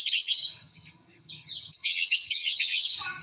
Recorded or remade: remade